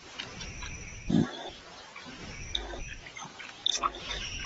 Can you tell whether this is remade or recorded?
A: remade